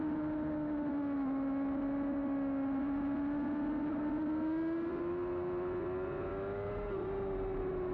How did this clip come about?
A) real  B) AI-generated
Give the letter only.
A